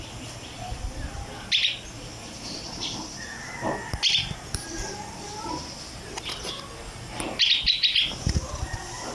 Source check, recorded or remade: recorded